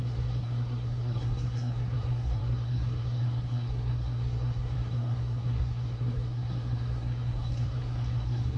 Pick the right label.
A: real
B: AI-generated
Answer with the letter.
B